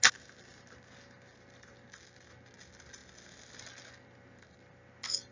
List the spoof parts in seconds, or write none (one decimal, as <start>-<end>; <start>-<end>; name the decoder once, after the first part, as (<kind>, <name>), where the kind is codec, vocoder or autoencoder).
none